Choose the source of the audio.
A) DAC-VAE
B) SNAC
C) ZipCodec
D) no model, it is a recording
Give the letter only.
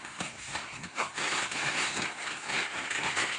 B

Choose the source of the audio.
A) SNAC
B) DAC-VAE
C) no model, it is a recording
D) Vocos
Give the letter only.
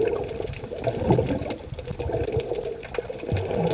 C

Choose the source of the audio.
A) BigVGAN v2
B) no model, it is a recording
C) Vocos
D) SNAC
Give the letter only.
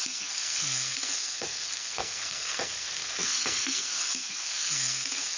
D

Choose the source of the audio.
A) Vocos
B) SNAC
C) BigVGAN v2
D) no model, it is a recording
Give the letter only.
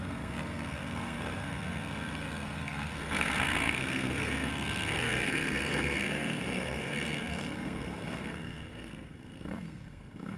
B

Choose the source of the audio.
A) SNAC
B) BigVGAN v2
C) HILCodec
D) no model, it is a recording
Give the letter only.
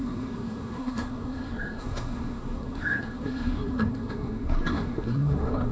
A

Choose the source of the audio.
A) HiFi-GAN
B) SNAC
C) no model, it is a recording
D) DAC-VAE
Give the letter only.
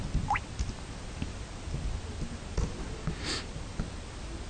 C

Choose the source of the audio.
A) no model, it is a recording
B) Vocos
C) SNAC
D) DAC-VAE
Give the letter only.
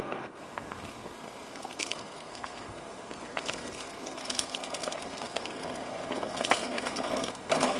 C